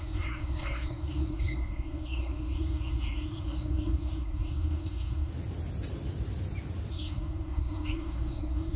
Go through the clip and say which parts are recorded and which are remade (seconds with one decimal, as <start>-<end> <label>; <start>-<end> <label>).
0.0-5.3 remade; 5.3-6.9 recorded; 6.9-8.8 remade